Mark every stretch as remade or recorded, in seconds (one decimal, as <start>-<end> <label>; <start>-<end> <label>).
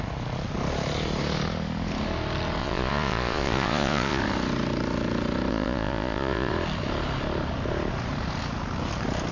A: 0.0-2.6 recorded; 2.6-4.2 remade; 4.2-5.5 recorded; 5.5-6.5 remade; 6.5-9.3 recorded